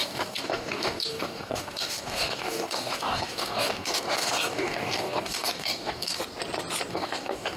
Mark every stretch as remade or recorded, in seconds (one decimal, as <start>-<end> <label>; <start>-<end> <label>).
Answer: 0.0-6.2 remade; 6.2-6.9 recorded; 6.9-7.6 remade